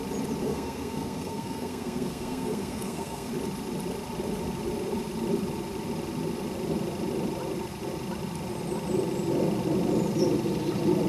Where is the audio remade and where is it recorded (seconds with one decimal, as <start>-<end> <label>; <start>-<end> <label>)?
0.0-0.4 recorded; 0.4-3.3 remade; 3.3-11.1 recorded